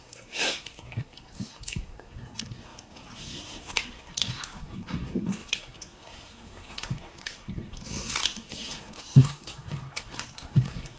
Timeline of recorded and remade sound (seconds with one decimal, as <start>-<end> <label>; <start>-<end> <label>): 0.0-11.0 remade